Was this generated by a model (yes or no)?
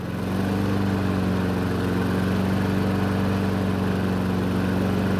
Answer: no